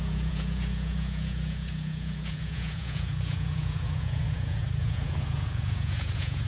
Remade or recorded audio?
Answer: remade